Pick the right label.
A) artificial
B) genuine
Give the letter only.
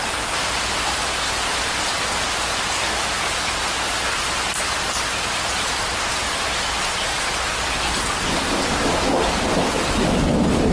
B